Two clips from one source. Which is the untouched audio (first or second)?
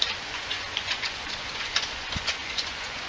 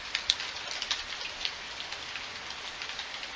second